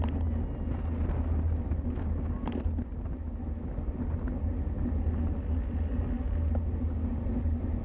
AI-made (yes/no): no